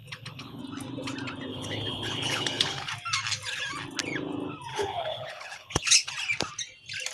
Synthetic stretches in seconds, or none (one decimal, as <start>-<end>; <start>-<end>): 0.0-0.6; 1.5-2.9; 4.7-6.1